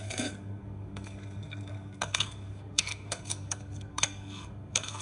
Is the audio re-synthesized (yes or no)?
yes